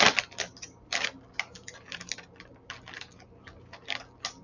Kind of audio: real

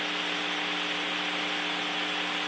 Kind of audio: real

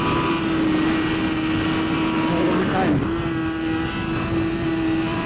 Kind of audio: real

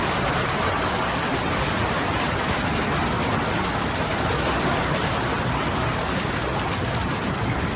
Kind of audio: real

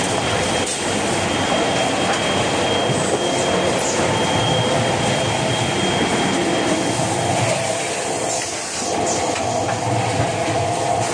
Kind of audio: real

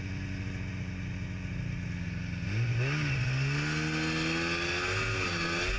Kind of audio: real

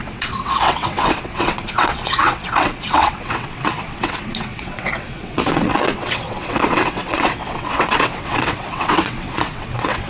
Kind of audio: fake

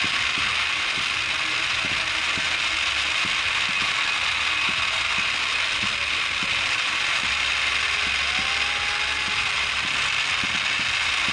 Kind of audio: real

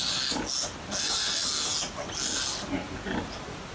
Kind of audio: real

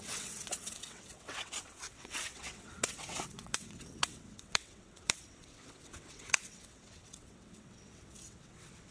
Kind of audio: fake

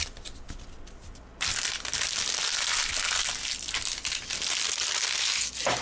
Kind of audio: real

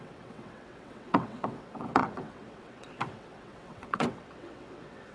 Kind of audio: fake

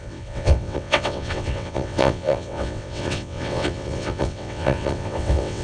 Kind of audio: fake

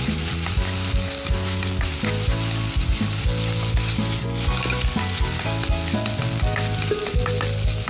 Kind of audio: real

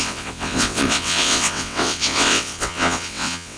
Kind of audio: fake